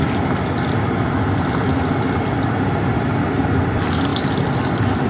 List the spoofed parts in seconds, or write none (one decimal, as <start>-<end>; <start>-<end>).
none

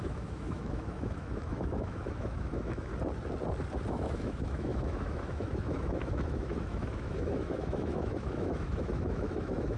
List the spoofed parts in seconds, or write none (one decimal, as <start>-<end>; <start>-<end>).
0.0-2.9; 3.9-9.8

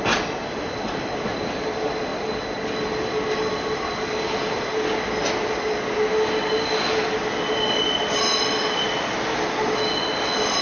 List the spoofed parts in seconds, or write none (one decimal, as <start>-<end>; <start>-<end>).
none

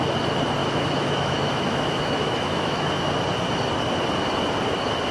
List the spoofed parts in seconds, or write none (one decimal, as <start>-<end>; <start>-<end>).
0.6-3.1